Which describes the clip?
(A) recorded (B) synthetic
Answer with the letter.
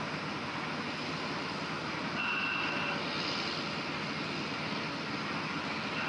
A